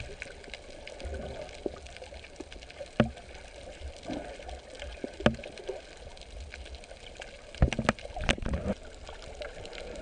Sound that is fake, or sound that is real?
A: real